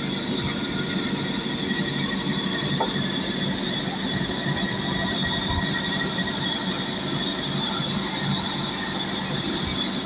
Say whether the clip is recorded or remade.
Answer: recorded